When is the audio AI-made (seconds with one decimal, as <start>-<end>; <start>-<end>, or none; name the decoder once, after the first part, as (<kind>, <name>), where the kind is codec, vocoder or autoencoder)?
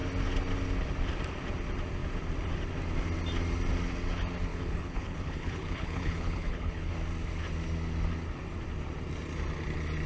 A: 4.5-6.9 (codec, HILCodec)